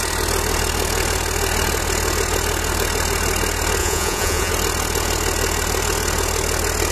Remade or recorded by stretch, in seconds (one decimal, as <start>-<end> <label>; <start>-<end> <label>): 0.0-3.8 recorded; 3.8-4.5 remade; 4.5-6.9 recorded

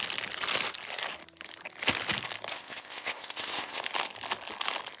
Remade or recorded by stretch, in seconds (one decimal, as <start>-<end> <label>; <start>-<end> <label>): 0.0-2.5 recorded; 2.5-3.8 remade; 3.8-5.0 recorded

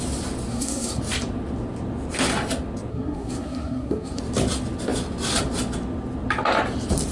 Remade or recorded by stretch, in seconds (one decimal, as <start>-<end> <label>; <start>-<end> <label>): 0.0-0.5 recorded; 0.5-1.0 remade; 1.0-2.9 recorded; 2.9-4.2 remade; 4.2-7.1 recorded

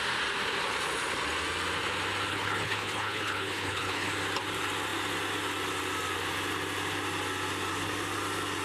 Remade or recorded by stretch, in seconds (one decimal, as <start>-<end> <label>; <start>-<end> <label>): 0.0-2.3 recorded; 2.3-4.1 remade; 4.1-8.6 recorded

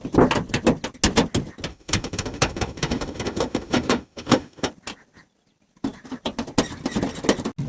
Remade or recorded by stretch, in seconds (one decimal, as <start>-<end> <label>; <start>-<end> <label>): 0.0-1.7 recorded; 1.7-4.7 remade; 4.7-7.7 recorded

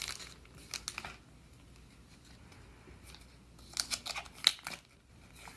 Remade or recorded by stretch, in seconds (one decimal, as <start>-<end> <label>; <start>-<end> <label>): 0.0-5.6 recorded